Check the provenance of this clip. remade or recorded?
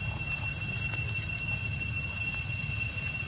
recorded